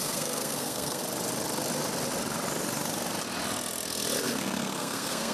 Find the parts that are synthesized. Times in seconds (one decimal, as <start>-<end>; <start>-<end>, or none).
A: 0.0-1.0; 4.2-5.3